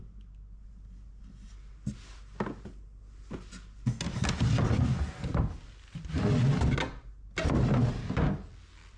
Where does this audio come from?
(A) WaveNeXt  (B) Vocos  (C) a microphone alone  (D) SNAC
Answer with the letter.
C